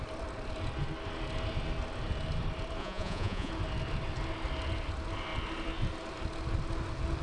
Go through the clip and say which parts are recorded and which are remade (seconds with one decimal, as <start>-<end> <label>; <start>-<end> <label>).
0.0-2.8 recorded; 2.8-3.5 remade; 3.5-7.2 recorded